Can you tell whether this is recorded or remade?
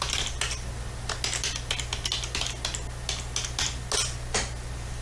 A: recorded